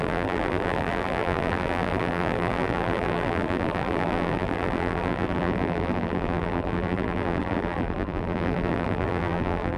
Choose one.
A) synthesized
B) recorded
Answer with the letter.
A